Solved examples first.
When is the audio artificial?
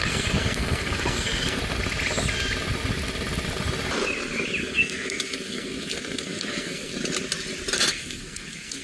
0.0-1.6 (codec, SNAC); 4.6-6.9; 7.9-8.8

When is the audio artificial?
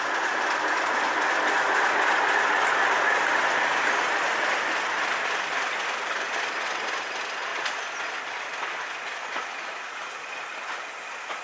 none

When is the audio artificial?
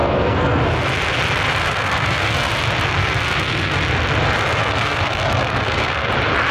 0.0-0.6 (codec, SNAC); 1.6-2.5; 3.0-3.8; 4.6-6.1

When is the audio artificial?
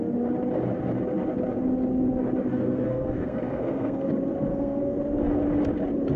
2.5-4.1 (codec, SNAC); 4.5-5.0